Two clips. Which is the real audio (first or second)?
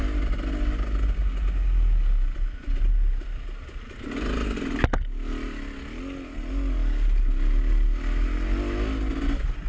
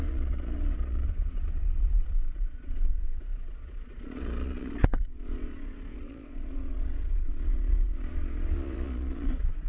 first